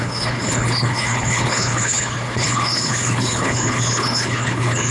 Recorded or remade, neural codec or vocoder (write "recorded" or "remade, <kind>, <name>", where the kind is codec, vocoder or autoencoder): remade, codec, HILCodec